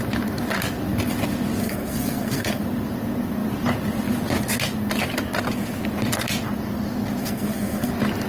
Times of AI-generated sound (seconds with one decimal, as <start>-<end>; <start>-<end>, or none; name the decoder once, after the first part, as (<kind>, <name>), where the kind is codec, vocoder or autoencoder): 1.6-2.6 (codec, SNAC); 7.2-7.9